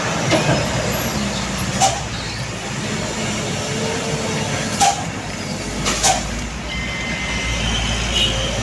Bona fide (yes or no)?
yes